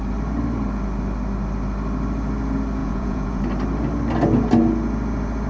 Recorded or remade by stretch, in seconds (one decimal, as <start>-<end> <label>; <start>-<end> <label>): 0.0-2.8 recorded; 2.8-3.4 remade; 3.4-5.5 recorded